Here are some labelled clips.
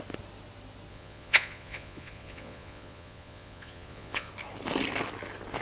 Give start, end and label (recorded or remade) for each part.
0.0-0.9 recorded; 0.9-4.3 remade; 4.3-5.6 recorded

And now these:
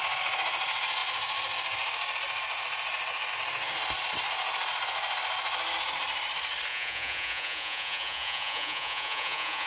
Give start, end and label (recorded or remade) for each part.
0.0-6.7 recorded; 6.7-9.7 remade

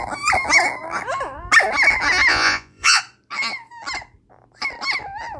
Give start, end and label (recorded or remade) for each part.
0.0-2.3 recorded; 2.3-3.0 remade; 3.0-5.4 recorded

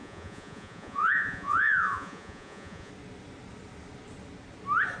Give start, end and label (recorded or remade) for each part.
0.0-2.9 remade; 2.9-5.0 recorded

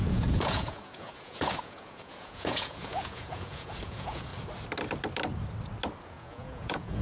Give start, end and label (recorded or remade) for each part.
0.0-4.3 remade; 4.3-6.1 recorded; 6.1-7.0 remade

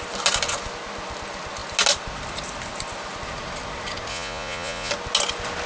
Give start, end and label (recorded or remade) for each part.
0.0-4.1 recorded; 4.1-4.9 remade; 4.9-5.7 recorded